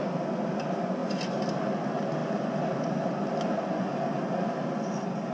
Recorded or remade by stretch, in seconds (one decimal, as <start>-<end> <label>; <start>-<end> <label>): 0.0-2.2 recorded; 2.2-3.2 remade; 3.2-5.3 recorded